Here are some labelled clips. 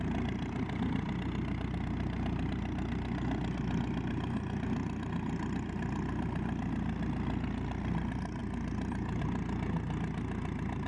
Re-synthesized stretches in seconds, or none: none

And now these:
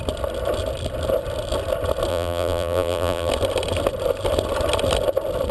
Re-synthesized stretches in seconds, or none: 2.1-3.3 (vocoder, BigVGAN v2)

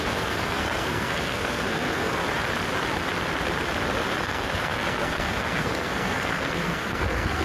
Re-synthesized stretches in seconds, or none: 0.0-2.2 (codec, SNAC); 4.2-7.4

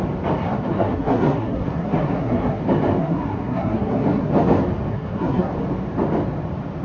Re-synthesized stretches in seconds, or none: 0.4-2.6 (codec, SNAC); 3.0-4.3; 4.9-5.5